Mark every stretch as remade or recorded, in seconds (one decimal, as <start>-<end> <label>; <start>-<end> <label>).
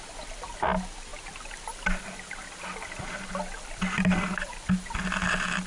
0.0-5.7 recorded